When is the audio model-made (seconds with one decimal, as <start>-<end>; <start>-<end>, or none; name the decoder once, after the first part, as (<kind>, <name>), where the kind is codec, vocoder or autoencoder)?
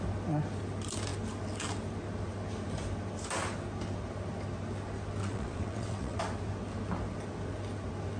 5.2-6.2 (vocoder, WaveNeXt)